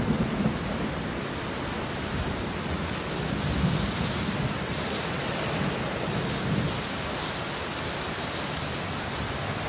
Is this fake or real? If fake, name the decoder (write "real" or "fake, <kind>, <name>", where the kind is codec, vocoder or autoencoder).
real